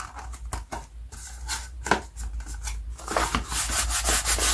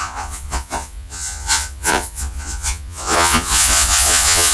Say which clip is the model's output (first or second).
second